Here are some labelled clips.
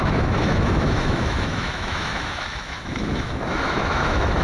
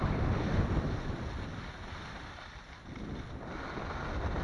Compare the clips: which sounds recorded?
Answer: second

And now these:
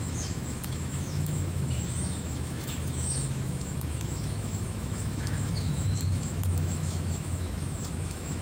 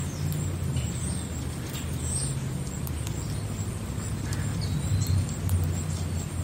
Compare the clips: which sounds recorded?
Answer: second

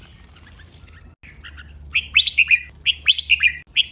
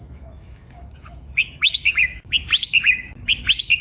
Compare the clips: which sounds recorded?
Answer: first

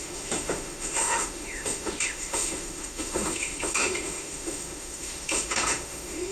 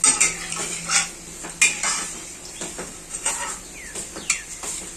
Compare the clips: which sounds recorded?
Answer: second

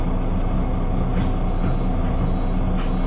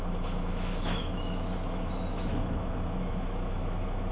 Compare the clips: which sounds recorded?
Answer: first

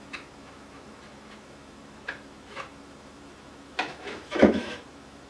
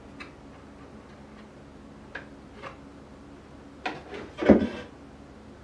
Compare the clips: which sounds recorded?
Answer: second